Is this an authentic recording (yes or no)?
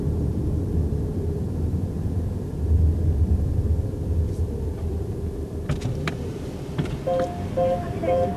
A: no